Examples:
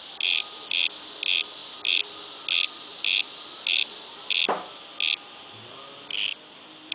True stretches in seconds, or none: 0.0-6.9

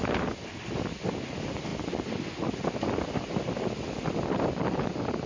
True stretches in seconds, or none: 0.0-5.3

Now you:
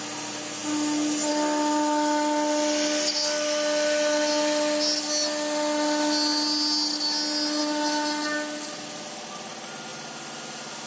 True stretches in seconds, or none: 0.0-10.9

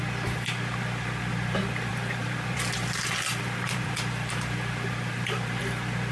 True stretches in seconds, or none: 0.0-1.9; 5.6-6.1

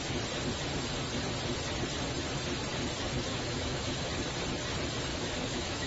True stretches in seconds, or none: 0.0-3.3; 4.1-5.1

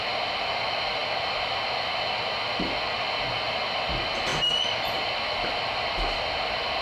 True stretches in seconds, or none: 0.0-6.8

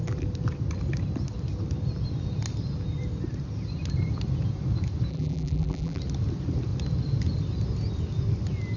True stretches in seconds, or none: 0.0-5.1; 6.0-8.8